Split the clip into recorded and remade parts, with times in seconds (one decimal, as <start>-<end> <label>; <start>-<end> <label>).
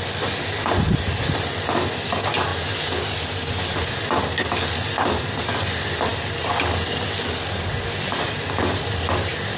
0.0-9.6 recorded